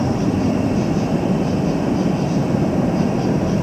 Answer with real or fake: real